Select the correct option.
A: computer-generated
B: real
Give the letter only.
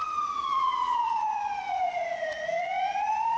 A